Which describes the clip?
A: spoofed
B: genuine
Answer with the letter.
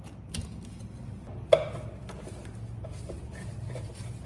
B